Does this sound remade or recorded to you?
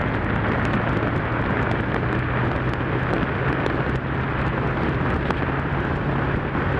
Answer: recorded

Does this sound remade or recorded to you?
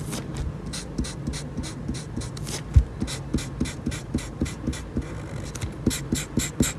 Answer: recorded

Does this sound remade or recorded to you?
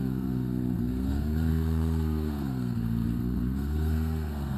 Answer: remade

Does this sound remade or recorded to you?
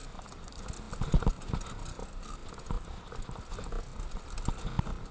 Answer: recorded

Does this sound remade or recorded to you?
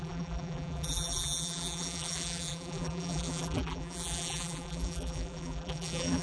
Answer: remade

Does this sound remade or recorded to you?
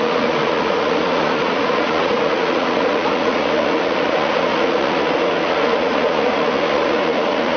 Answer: remade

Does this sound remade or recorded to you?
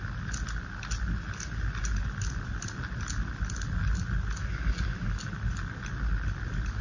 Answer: recorded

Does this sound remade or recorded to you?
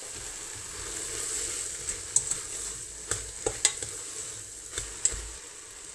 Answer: recorded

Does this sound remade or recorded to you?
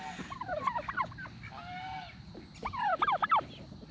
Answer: recorded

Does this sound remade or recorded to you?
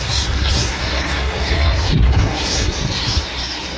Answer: remade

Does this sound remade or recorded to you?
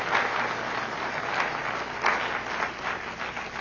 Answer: recorded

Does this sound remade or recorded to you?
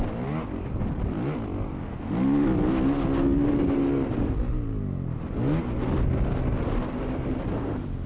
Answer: recorded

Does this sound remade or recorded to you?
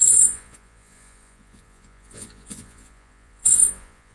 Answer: remade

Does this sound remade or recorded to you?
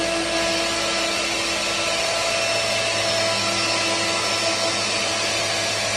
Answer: recorded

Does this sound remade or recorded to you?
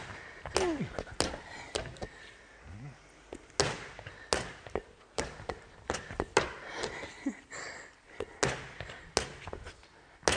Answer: recorded